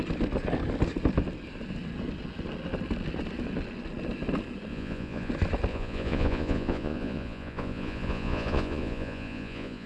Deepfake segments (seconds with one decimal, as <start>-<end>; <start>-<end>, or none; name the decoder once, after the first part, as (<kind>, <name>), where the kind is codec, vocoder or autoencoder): 4.7-5.3 (vocoder, Vocos); 5.7-9.9